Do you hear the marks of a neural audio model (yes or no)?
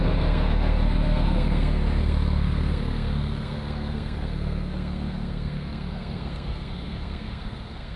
yes